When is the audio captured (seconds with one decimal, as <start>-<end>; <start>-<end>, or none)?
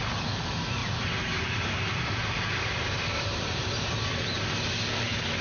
0.0-0.8; 4.0-5.4